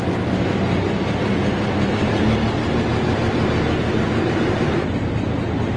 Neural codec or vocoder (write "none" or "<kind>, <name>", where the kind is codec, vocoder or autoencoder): none